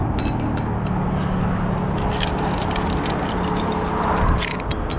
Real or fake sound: real